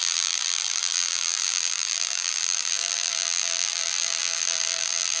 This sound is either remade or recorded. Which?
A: remade